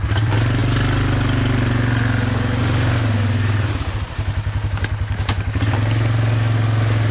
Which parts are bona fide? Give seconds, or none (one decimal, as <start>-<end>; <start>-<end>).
0.0-7.1